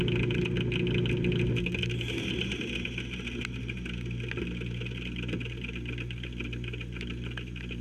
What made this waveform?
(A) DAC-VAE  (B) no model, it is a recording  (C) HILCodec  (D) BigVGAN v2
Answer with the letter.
B